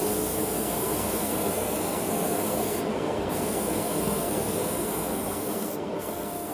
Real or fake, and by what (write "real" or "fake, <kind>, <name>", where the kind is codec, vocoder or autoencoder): fake, codec, SNAC